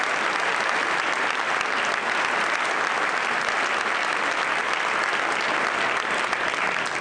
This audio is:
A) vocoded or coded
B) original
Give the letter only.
B